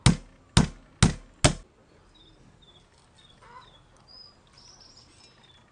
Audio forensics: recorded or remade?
recorded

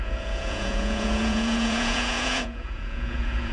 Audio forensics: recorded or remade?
remade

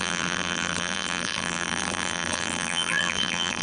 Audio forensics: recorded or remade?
remade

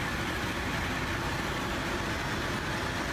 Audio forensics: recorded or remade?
recorded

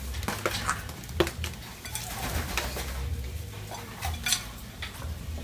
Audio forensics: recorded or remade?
recorded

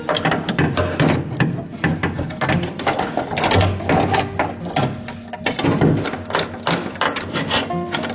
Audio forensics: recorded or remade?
recorded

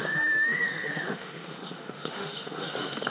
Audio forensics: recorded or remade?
remade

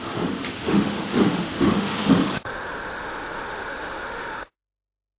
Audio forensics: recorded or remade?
remade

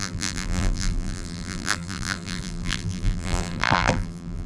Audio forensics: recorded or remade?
remade